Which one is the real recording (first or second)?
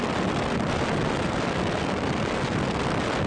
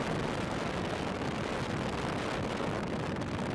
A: second